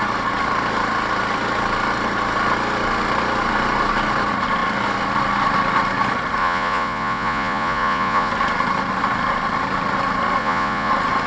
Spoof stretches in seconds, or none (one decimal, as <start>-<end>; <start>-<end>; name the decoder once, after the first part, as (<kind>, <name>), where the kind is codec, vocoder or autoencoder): 6.4-8.3 (vocoder, Vocos); 10.4-10.9